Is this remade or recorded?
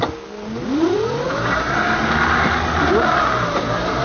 recorded